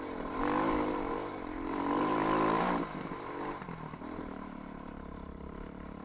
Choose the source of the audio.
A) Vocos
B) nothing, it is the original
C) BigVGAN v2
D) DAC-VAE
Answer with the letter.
C